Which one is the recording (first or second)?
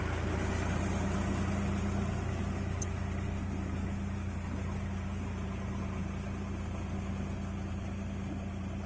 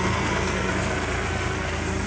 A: first